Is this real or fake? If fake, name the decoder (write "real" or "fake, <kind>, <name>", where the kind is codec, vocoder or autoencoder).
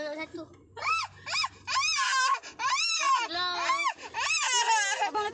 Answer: real